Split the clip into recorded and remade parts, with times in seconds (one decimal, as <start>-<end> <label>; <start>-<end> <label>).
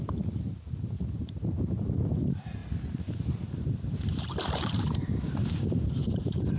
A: 0.0-0.5 recorded; 0.5-2.0 remade; 2.0-2.6 recorded; 2.6-6.6 remade